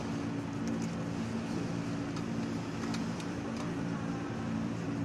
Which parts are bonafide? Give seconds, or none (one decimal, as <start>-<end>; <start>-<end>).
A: 0.0-3.0